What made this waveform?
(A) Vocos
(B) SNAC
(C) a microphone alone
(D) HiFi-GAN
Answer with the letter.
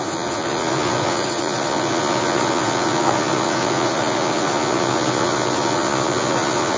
A